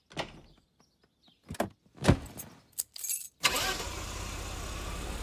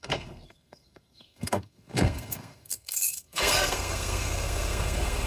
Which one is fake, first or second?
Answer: second